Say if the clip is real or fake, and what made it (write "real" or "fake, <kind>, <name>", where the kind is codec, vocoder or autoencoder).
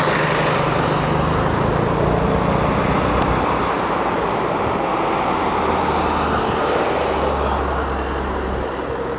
real